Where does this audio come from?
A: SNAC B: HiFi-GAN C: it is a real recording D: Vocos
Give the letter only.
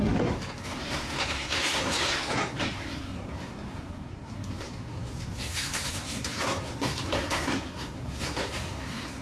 A